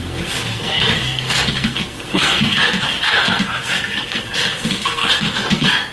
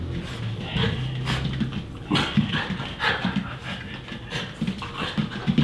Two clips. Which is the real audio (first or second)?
second